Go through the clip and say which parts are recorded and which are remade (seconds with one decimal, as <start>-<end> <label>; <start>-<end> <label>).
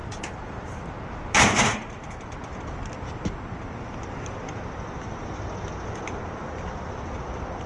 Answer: 0.0-1.0 recorded; 1.0-2.4 remade; 2.4-6.9 recorded; 6.9-7.7 remade